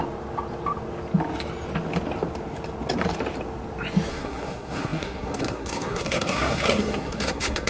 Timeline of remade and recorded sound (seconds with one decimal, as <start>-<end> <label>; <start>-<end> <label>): 0.0-4.1 recorded; 4.1-7.7 remade